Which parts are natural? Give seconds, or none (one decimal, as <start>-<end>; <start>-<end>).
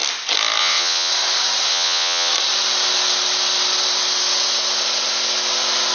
0.0-0.6; 1.1-1.7; 2.3-5.9